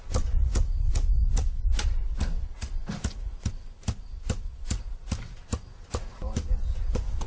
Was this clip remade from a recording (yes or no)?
no